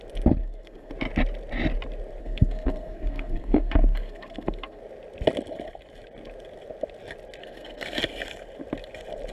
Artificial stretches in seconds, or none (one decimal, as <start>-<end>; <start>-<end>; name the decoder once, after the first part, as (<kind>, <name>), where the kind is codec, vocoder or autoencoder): 0.4-0.9 (codec, SNAC); 2.2-4.8; 7.4-8.0